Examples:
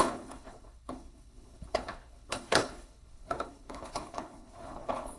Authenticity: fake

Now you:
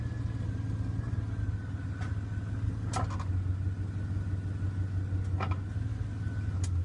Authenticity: real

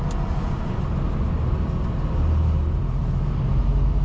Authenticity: real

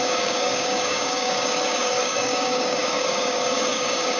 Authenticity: fake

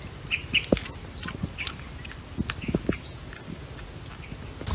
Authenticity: real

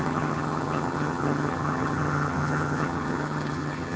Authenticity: fake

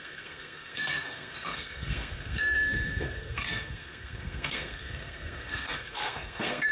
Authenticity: fake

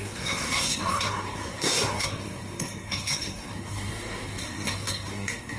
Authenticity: fake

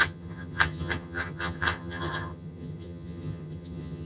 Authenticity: fake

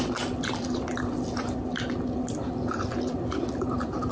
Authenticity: real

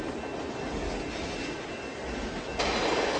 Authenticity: real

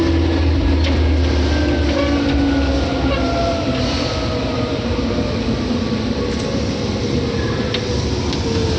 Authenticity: real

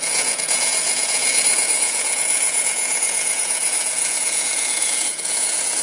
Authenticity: fake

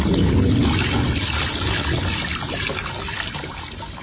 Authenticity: real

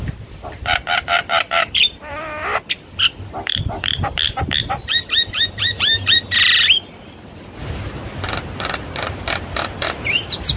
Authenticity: fake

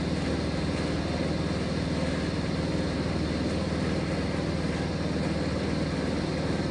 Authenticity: real